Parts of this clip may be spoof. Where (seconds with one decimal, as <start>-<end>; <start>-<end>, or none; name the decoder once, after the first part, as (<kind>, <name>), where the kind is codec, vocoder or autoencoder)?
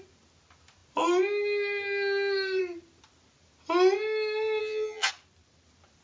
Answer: 4.6-5.1 (vocoder, HiFi-GAN)